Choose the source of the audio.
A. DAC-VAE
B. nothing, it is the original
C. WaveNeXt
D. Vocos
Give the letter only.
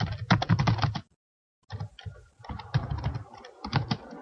B